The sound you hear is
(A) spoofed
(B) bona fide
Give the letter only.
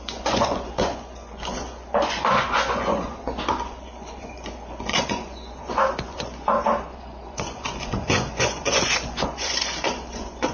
A